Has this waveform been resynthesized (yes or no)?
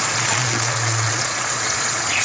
yes